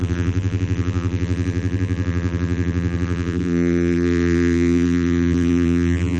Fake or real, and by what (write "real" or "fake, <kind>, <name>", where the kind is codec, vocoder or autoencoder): fake, vocoder, BigVGAN v2